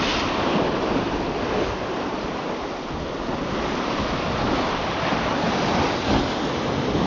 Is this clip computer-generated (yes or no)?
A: no